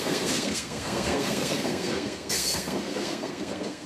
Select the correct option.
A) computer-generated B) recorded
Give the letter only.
A